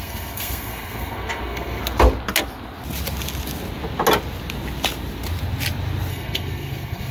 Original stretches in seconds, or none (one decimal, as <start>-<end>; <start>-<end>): 1.8-6.1